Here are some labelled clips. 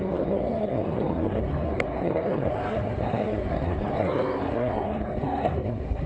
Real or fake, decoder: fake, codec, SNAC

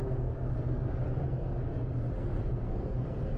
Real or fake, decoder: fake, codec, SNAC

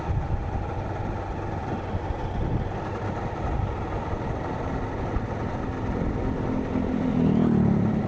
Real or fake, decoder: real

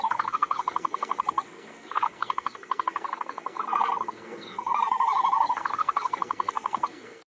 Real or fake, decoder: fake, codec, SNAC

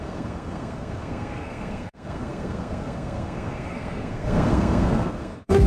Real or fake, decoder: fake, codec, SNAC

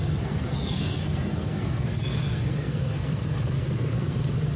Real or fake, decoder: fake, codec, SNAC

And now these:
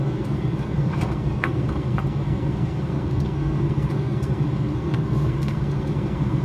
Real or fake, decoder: fake, codec, SNAC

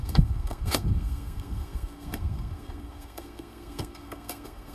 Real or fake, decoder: fake, codec, SNAC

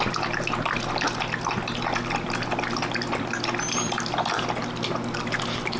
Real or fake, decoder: real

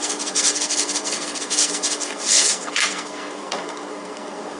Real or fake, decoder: fake, codec, SNAC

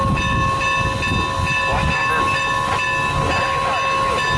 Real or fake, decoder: real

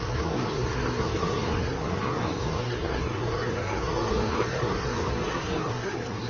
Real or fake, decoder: fake, codec, SNAC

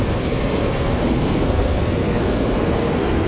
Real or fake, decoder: fake, codec, SNAC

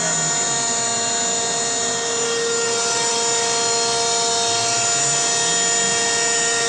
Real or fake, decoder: real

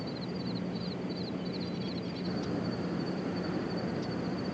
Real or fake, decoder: real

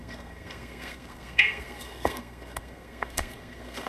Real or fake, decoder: fake, codec, SNAC